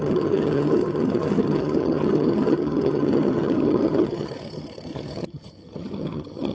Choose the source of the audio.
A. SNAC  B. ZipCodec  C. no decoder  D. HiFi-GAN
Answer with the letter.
D